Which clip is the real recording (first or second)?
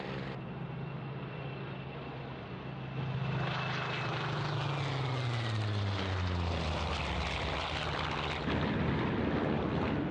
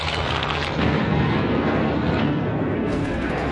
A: first